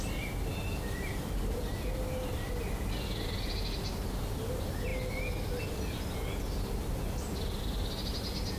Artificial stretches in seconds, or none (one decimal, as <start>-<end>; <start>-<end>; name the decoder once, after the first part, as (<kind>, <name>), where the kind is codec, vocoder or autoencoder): none